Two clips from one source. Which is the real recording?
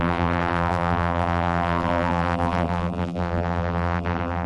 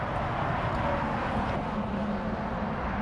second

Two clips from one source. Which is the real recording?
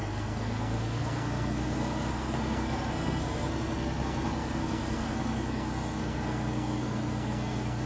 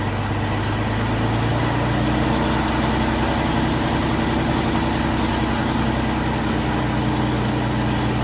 second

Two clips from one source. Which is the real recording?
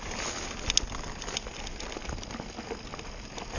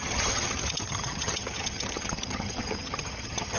first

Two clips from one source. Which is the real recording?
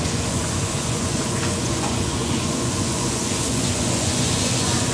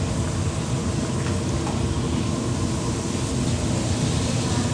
second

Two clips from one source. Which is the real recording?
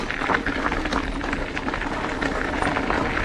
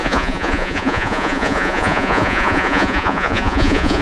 first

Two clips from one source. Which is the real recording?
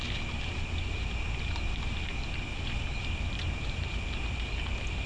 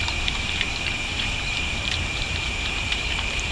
first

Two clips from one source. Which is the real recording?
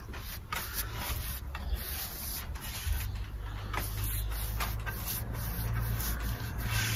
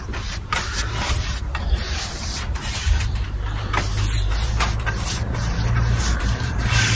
first